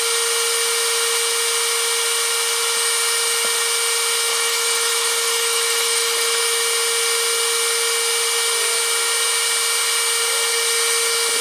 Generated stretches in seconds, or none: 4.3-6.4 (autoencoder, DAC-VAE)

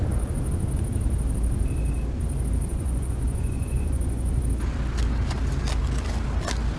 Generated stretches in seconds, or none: 2.7-4.4 (vocoder, Vocos)

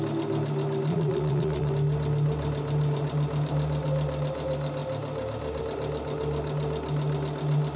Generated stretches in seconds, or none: 0.9-1.7 (vocoder, Vocos)

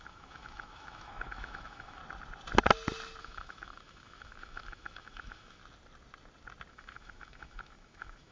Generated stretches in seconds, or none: 0.0-2.0 (autoencoder, DAC-VAE); 3.2-5.6; 6.7-8.3